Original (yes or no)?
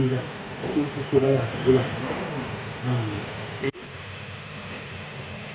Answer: no